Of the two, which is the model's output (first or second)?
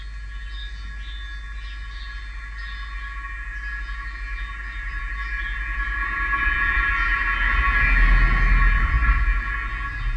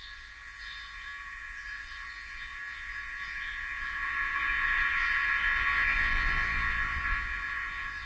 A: second